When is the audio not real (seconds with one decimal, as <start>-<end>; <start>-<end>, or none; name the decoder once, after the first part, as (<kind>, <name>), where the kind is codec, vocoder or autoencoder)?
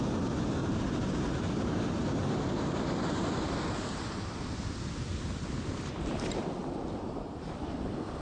0.0-0.6 (vocoder, BigVGAN v2); 5.4-8.2